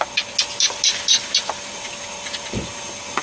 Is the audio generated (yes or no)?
no